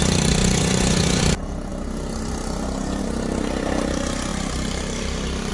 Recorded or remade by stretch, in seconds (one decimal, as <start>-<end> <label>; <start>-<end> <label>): 0.0-0.4 recorded; 0.4-1.2 remade; 1.2-5.5 recorded